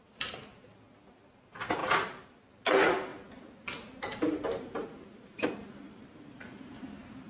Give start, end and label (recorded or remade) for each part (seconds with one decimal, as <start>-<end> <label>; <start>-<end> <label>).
0.0-7.3 recorded